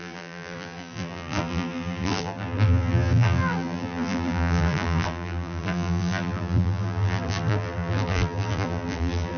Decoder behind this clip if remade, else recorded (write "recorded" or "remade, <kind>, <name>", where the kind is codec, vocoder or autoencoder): remade, vocoder, BigVGAN v2